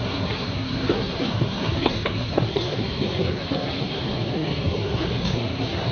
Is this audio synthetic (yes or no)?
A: yes